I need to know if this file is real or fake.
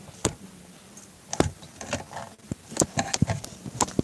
real